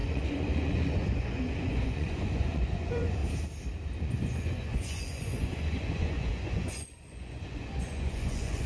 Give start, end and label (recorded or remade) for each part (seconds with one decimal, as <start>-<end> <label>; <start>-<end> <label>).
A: 0.0-3.2 remade; 3.2-4.0 recorded; 4.0-8.7 remade